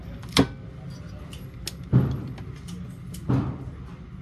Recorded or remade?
recorded